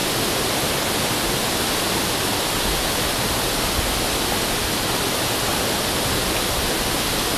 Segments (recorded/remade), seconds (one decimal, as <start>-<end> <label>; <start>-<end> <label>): 0.0-7.4 recorded